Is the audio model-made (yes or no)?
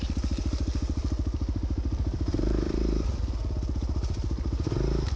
yes